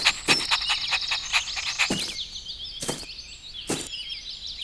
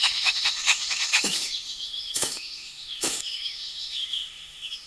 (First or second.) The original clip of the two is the first